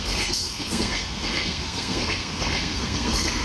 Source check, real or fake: fake